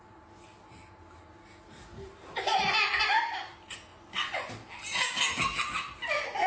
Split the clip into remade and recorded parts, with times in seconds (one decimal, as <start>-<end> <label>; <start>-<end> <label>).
0.0-2.5 recorded; 2.5-3.2 remade; 3.2-3.9 recorded; 3.9-4.5 remade; 4.5-6.5 recorded